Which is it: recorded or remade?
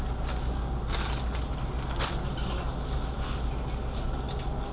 recorded